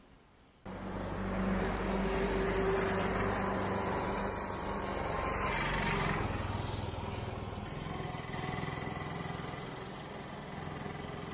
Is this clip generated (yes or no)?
no